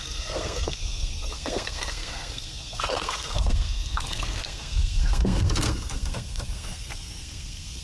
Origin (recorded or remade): remade